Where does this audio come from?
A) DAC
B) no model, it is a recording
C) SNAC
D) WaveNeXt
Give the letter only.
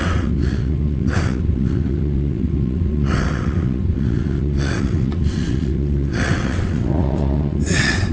D